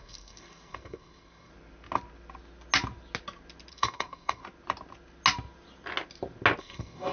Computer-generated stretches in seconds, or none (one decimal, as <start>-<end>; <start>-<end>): 0.0-1.5; 3.7-4.4; 6.6-7.1